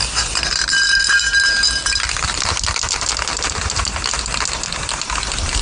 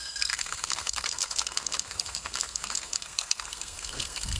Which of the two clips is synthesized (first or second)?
second